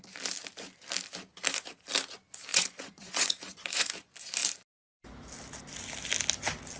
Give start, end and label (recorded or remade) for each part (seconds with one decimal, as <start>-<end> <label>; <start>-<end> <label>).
0.0-2.5 recorded; 2.5-3.9 remade; 3.9-6.8 recorded